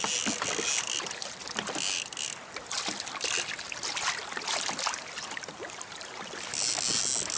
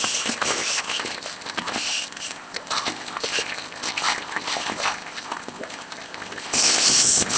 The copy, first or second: second